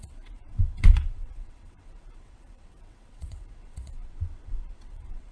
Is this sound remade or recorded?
remade